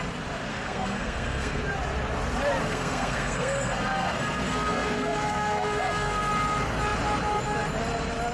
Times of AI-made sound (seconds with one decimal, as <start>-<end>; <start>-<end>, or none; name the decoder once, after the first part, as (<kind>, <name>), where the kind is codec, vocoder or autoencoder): 0.5-1.6 (codec, SNAC); 2.6-6.3